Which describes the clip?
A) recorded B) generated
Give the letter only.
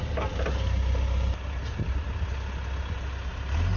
A